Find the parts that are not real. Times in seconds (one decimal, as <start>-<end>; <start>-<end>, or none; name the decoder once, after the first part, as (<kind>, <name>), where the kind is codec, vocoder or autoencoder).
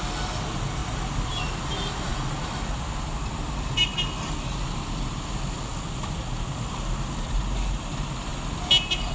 0.8-1.7 (vocoder, BigVGAN v2); 2.1-3.7; 5.7-7.4